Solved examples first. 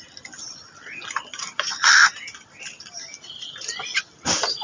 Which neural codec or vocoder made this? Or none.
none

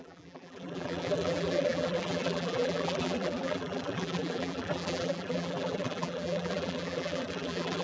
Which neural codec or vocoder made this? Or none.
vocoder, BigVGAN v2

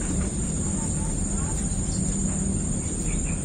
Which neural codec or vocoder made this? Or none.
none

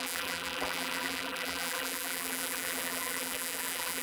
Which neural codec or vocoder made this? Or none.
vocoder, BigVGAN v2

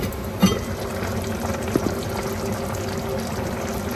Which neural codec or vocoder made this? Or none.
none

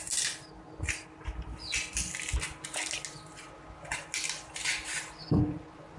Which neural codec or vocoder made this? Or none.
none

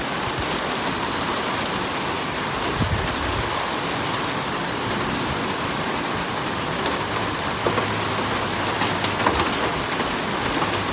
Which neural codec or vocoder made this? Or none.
none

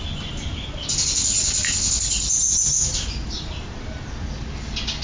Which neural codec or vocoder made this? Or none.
none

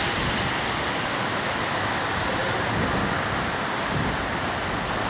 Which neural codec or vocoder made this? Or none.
none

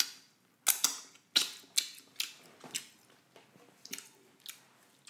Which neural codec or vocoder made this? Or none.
none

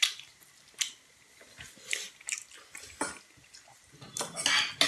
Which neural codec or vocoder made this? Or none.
none